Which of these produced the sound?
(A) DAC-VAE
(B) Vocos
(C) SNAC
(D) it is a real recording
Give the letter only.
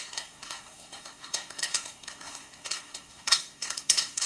C